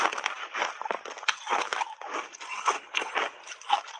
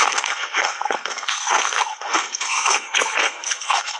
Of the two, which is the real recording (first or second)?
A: first